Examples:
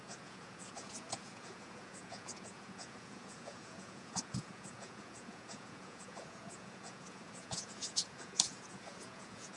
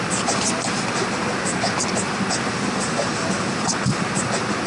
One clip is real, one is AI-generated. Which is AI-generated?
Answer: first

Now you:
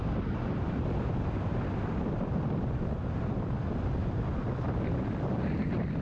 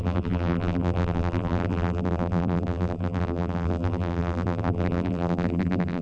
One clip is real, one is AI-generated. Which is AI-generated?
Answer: second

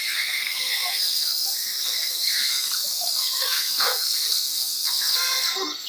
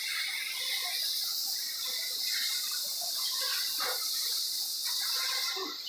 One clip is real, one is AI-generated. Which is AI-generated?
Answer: first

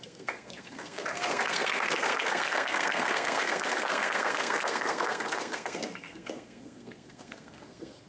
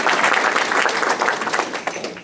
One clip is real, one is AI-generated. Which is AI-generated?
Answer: first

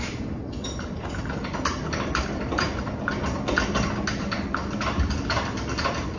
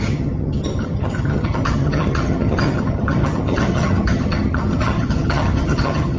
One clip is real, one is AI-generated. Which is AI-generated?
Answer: second